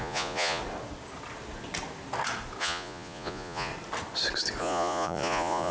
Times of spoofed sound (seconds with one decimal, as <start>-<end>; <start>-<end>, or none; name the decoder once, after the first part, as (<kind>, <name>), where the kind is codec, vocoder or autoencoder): 0.0-0.6 (vocoder, Vocos); 2.6-3.7; 4.6-5.7